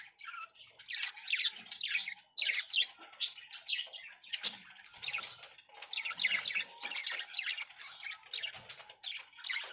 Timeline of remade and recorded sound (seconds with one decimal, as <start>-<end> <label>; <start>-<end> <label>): 0.0-9.7 recorded